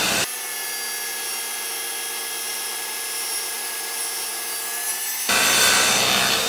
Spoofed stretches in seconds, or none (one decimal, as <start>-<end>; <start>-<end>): 2.5-4.0